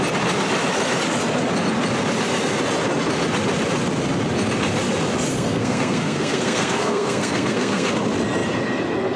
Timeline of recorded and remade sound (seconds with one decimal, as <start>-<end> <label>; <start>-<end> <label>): 0.0-5.3 recorded; 5.3-7.9 remade; 7.9-9.2 recorded